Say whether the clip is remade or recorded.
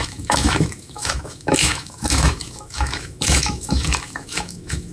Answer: remade